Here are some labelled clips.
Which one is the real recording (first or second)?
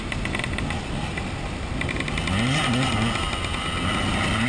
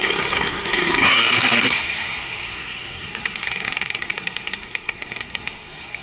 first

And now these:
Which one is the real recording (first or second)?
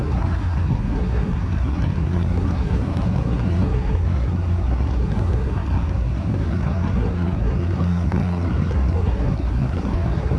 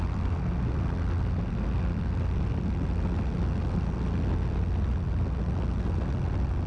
second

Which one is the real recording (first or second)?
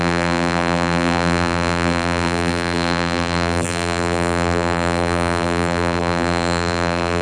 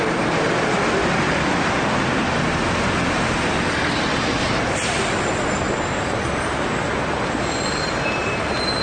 second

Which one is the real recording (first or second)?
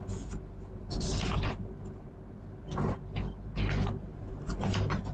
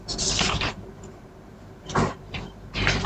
first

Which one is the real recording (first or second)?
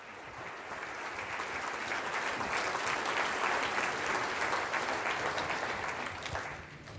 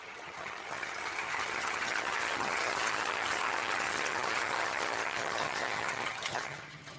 first